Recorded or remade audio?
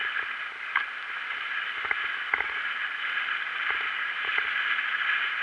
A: recorded